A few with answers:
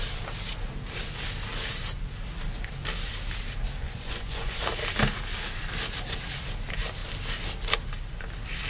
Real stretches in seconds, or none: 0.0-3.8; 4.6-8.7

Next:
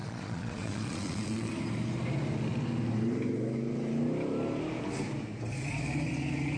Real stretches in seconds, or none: 1.5-6.6

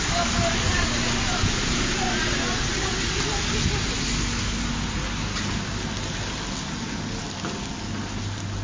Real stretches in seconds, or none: 0.0-1.4; 2.0-8.6

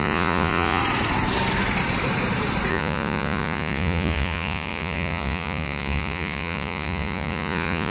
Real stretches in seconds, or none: 0.8-2.7

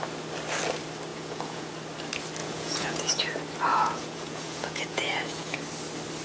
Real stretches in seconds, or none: 0.0-1.1; 1.7-2.4; 3.1-3.7; 5.6-6.2

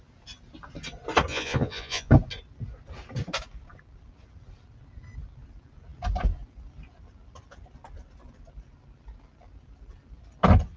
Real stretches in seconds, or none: 0.0-1.3; 2.1-10.8

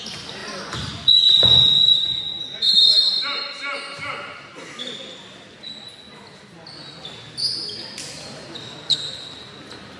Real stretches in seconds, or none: 0.0-0.4; 3.2-10.0